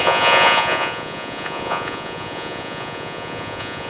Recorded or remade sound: remade